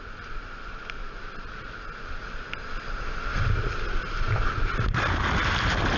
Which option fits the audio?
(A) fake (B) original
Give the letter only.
B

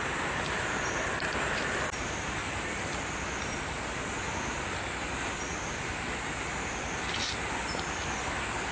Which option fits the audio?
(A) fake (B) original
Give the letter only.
B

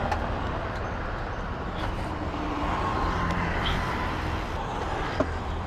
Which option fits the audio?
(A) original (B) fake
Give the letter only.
B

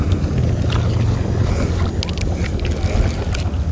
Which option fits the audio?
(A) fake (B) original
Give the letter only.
B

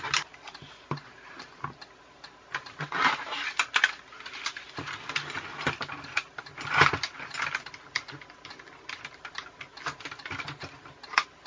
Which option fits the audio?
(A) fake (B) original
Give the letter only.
B